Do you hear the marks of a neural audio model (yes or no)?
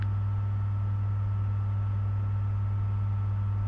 no